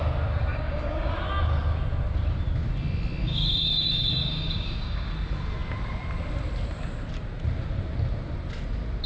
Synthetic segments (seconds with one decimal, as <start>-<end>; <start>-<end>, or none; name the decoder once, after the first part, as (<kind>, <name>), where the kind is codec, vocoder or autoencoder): 0.5-1.1 (codec, DAC); 3.2-5.1